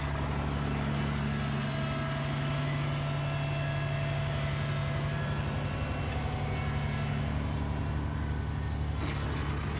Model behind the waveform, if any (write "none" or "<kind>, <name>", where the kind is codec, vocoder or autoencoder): none